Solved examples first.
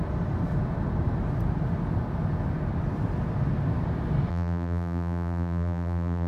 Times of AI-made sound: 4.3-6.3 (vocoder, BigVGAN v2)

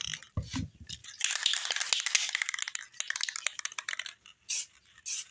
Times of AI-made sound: none